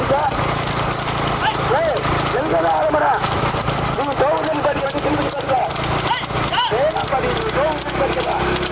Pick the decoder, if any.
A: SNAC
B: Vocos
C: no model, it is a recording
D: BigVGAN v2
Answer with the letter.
C